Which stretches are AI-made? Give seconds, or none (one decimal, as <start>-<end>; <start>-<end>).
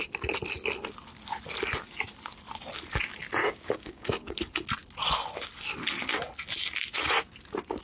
3.4-4.3